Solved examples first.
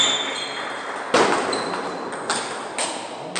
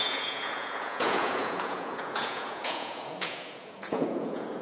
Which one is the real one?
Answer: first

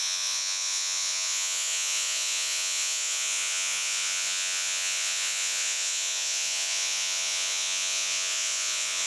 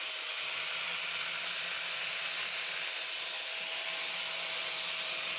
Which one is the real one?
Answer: second